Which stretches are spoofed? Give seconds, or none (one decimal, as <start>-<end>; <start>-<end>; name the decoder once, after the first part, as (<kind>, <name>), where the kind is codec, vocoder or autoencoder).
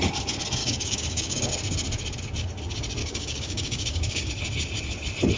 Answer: 0.6-1.5 (codec, DAC); 3.0-4.3